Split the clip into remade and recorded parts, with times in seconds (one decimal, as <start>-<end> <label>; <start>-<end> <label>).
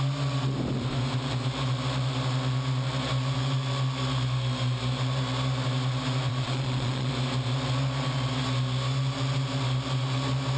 0.0-6.3 recorded; 6.3-7.1 remade; 7.1-10.6 recorded